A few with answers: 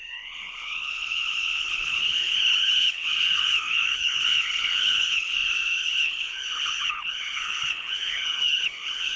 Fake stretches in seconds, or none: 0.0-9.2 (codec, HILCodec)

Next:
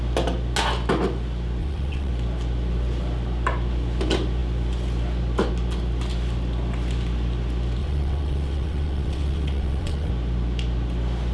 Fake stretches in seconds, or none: 1.6-2.1 (vocoder, WaveNeXt); 7.8-10.1

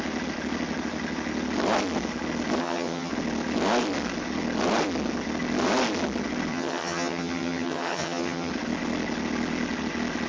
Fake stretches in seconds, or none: 2.6-3.1 (vocoder, HiFi-GAN); 6.5-8.5

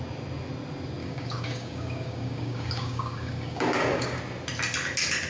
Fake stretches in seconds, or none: 1.0-4.2 (codec, DAC)

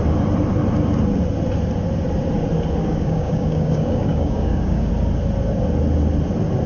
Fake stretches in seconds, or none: 2.8-4.9 (codec, DAC)

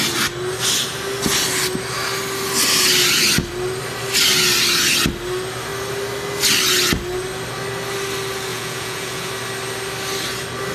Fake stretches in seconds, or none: 8.5-9.3 (vocoder, Vocos)

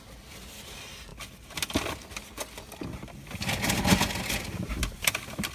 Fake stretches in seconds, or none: none